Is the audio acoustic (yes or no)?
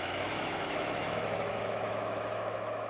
no